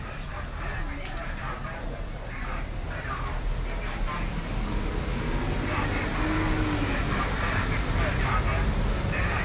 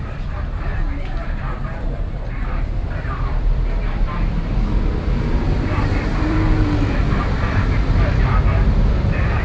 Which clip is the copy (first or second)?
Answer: second